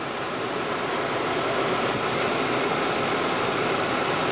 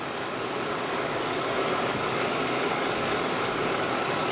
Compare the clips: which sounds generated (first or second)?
second